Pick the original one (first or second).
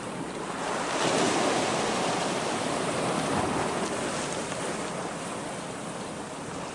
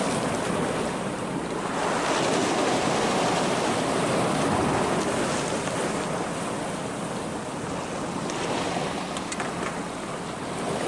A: second